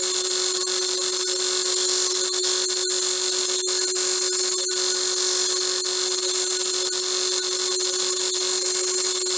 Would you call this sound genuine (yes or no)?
yes